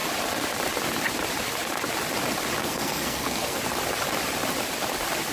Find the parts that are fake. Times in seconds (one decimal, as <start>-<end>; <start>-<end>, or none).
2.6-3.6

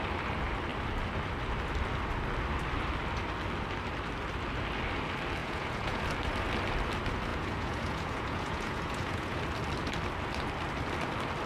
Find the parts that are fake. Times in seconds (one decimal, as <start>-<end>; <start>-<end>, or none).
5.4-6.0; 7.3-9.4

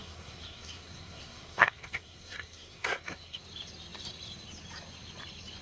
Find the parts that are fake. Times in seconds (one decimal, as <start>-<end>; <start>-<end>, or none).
0.0-3.4

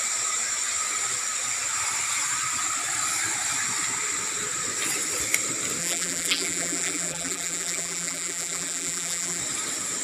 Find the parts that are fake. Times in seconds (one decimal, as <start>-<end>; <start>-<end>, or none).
5.8-9.4

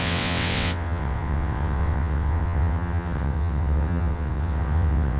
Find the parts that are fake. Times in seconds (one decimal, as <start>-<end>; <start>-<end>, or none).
0.0-5.2

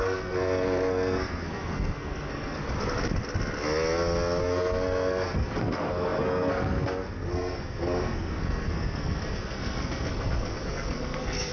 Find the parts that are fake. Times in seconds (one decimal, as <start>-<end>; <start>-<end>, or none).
0.0-2.6; 4.4-11.5

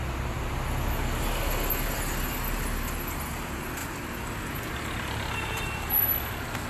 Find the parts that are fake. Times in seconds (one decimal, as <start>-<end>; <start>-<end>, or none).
none

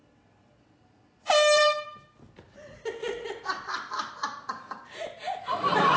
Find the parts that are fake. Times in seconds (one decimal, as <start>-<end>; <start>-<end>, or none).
none